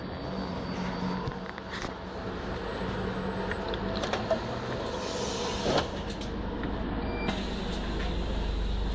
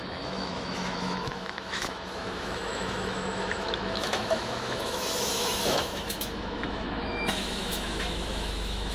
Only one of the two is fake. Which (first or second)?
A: second